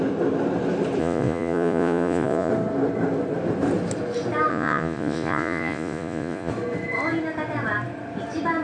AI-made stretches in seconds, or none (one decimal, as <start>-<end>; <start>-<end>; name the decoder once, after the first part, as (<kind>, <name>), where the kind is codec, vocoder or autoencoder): 1.0-2.5 (vocoder, Vocos); 4.5-6.5

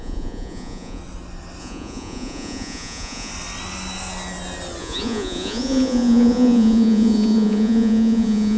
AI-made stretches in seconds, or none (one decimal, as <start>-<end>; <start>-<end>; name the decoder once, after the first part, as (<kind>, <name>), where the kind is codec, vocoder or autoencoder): 0.0-1.0 (vocoder, Vocos); 1.6-3.3; 4.8-8.6

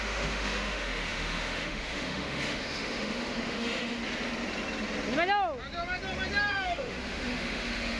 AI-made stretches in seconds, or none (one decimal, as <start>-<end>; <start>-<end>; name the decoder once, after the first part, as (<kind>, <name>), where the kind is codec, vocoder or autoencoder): 0.0-4.0 (autoencoder, DAC-VAE); 6.5-8.0

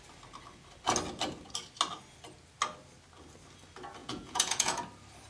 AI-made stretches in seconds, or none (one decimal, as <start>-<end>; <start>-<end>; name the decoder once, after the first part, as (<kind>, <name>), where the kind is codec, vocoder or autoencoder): 4.0-4.8 (vocoder, Vocos)

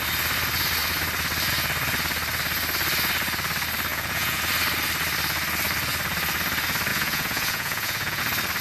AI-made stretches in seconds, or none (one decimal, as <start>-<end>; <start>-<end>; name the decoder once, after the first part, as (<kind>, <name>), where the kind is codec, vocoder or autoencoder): 3.9-4.4 (vocoder, Vocos); 6.9-8.2

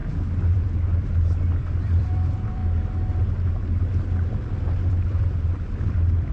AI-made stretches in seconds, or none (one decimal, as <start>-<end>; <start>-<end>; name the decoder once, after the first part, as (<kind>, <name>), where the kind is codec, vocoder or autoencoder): 0.0-2.6 (vocoder, BigVGAN v2); 4.9-6.3

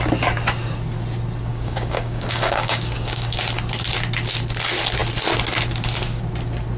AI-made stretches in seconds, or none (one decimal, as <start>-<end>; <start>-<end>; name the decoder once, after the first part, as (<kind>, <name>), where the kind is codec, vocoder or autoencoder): 1.5-3.4 (codec, DAC)